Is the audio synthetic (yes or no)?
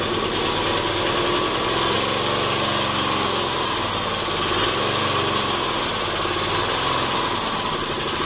no